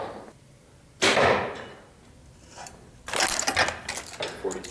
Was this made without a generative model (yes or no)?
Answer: yes